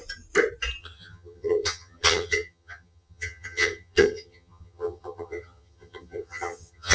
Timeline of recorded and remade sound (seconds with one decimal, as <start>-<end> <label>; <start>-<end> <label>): 0.0-0.8 recorded; 0.8-6.9 remade